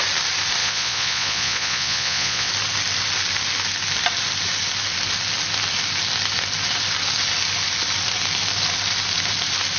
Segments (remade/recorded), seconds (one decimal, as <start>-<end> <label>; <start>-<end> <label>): 0.0-0.6 recorded; 0.6-2.5 remade; 2.5-9.8 recorded